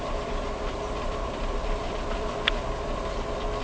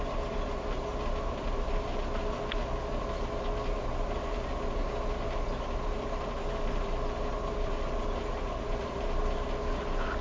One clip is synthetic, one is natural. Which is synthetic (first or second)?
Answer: first